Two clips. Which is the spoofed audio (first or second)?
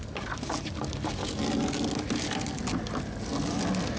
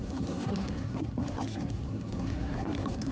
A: second